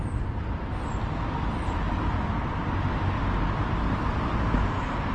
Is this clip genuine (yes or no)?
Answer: yes